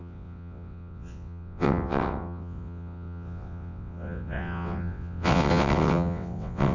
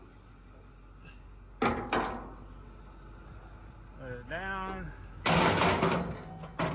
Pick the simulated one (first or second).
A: first